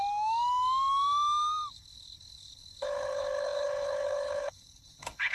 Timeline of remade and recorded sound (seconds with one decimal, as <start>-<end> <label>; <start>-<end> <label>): 0.0-1.7 recorded; 1.7-5.3 remade